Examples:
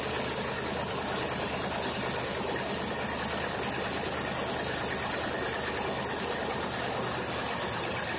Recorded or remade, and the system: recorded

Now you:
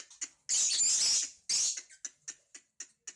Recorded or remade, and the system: recorded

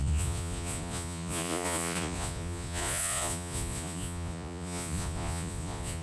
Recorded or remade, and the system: remade, vocoder, Vocos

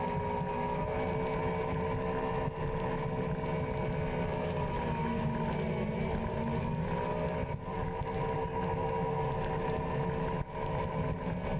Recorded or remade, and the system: recorded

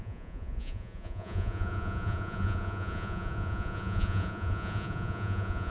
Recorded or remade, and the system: remade, vocoder, Vocos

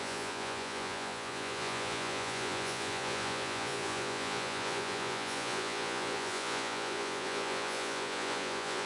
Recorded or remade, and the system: remade, vocoder, Vocos